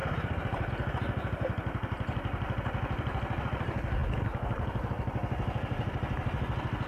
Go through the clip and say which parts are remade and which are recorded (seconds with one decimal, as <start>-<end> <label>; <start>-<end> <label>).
0.0-0.7 remade; 0.7-6.9 recorded